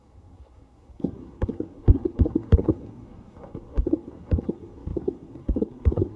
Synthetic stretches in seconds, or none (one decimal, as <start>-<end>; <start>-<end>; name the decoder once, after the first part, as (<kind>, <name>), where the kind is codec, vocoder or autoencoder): 0.0-6.2 (codec, SNAC)